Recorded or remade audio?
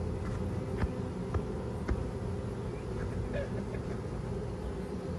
recorded